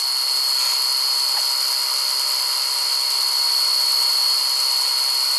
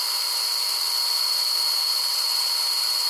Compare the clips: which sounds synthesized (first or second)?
second